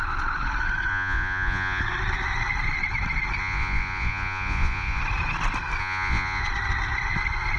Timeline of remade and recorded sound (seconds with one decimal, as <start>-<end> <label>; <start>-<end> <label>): 0.0-0.9 recorded; 0.9-1.8 remade; 1.8-3.4 recorded; 3.4-5.0 remade; 5.0-5.8 recorded; 5.8-6.4 remade; 6.4-7.6 recorded